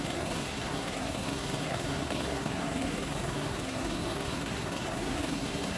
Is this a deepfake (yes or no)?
yes